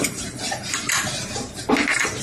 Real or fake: fake